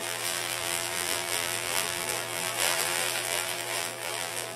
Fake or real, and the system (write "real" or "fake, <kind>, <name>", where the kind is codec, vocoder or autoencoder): fake, vocoder, BigVGAN v2